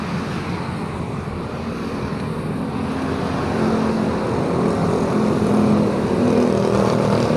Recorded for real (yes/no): yes